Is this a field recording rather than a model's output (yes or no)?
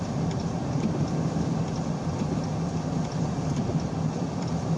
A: yes